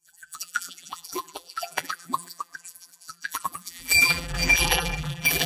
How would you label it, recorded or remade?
remade